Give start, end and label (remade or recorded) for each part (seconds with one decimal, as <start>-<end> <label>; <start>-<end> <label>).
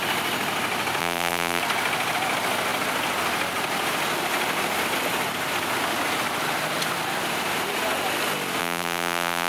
0.0-1.0 recorded; 1.0-1.6 remade; 1.6-8.6 recorded; 8.6-9.5 remade